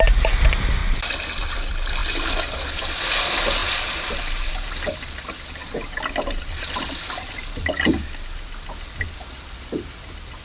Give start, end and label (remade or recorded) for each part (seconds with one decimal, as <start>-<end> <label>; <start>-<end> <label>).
0.0-0.8 recorded; 0.8-1.6 remade; 1.6-3.6 recorded; 3.6-4.5 remade; 4.5-10.4 recorded